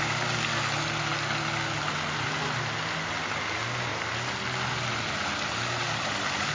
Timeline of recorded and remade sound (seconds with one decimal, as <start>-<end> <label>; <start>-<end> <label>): 0.0-6.5 recorded

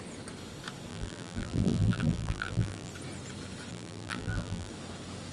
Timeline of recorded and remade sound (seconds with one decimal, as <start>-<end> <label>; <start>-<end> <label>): 0.0-0.9 recorded; 0.9-2.9 remade; 2.9-3.7 recorded; 3.7-4.7 remade; 4.7-5.3 recorded

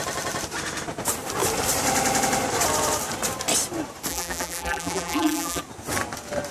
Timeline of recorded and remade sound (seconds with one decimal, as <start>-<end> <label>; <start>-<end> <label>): 0.0-4.1 recorded; 4.1-5.6 remade; 5.6-6.5 recorded

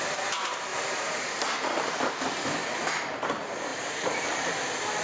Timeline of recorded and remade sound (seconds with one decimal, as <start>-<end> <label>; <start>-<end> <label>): 0.0-0.7 recorded; 0.7-1.3 remade; 1.3-3.7 recorded; 3.7-4.6 remade; 4.6-5.0 recorded

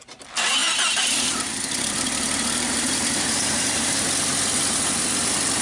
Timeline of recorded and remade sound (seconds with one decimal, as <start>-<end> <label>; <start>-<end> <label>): 0.0-0.6 recorded; 0.6-4.0 remade; 4.0-5.6 recorded

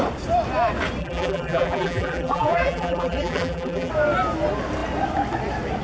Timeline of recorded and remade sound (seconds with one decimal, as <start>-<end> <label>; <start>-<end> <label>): 0.0-1.0 recorded; 1.0-3.9 remade; 3.9-5.8 recorded